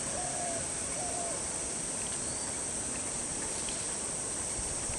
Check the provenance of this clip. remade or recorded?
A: remade